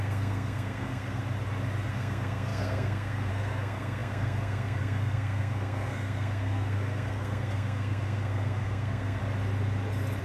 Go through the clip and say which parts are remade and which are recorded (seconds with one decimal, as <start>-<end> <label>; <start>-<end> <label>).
0.0-1.2 remade; 1.2-1.9 recorded; 1.9-9.2 remade; 9.2-10.2 recorded